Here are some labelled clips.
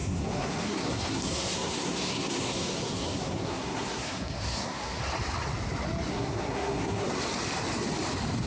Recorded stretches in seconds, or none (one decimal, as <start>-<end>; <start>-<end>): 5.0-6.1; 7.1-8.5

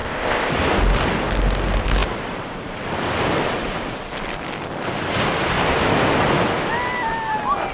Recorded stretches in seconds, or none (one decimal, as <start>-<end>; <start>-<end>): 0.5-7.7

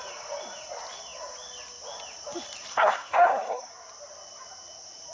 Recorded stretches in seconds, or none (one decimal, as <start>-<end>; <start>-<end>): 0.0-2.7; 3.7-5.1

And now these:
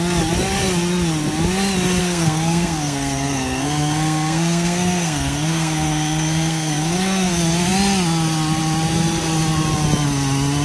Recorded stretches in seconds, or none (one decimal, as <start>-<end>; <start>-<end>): 0.0-2.0; 7.3-10.6

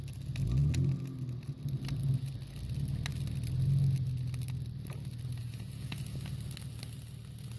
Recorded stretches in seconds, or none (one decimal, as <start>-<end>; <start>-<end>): 0.0-5.4; 6.0-7.6

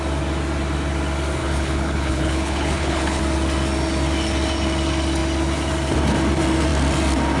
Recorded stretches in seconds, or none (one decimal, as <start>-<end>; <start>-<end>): 0.0-1.4; 3.2-7.4